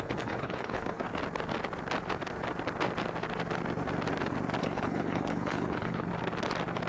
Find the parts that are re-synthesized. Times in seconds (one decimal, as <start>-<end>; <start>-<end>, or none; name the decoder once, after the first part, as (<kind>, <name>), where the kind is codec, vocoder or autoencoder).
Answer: 0.0-1.1 (codec, HILCodec); 4.6-6.1